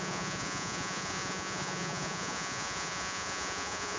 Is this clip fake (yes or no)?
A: yes